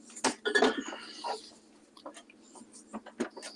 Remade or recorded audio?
recorded